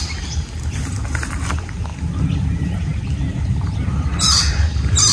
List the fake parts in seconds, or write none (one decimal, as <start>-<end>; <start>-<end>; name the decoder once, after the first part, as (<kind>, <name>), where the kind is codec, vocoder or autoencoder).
none